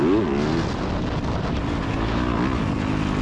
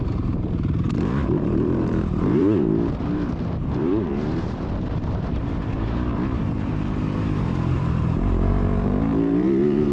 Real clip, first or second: first